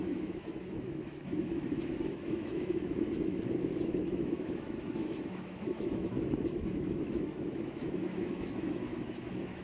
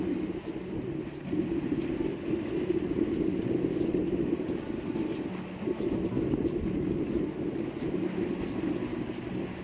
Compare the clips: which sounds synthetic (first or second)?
first